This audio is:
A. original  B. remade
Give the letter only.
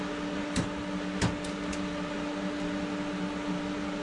A